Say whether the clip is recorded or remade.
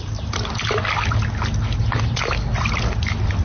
recorded